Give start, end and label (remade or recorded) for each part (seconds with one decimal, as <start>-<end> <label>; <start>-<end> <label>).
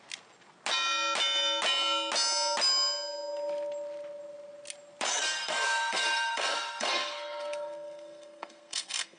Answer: 0.0-5.1 recorded; 5.1-9.2 remade